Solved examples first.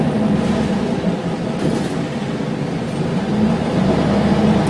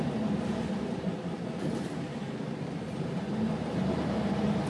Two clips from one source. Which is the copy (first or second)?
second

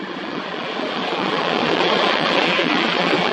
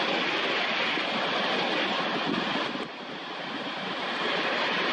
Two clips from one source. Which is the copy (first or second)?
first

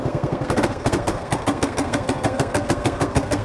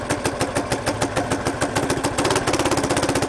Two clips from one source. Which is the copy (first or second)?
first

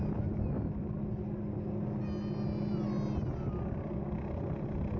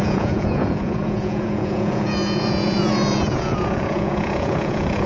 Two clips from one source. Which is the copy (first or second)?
second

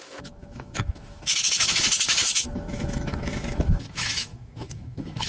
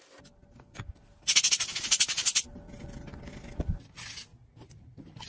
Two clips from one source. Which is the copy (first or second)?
first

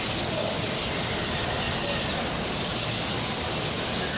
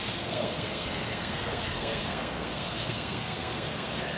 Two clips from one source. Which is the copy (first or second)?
second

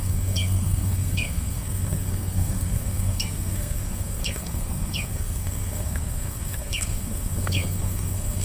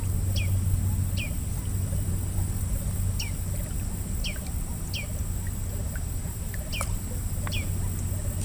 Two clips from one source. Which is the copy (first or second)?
first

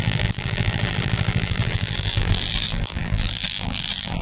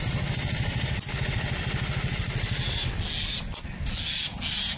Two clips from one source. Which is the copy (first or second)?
first